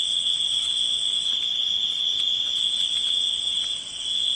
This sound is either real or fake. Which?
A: real